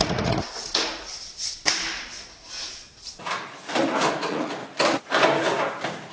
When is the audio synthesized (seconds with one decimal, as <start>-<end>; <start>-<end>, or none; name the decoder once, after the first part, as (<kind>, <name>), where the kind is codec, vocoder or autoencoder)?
0.0-1.1 (vocoder, Vocos); 4.1-4.6